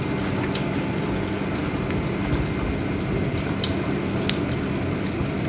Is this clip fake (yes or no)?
no